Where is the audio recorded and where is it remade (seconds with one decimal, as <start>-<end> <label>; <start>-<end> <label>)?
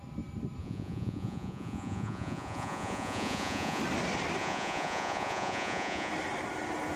0.0-0.6 recorded; 0.6-3.8 remade; 3.8-4.4 recorded; 4.4-6.1 remade; 6.1-7.0 recorded